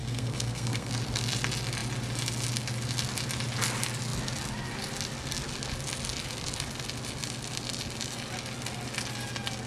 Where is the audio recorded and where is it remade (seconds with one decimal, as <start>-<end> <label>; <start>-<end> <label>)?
0.0-0.9 remade; 0.9-9.7 recorded